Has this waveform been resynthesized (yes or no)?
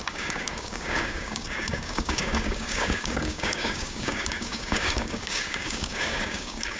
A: yes